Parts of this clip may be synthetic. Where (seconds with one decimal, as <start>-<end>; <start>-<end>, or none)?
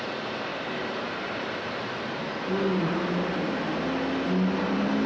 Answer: 0.5-3.0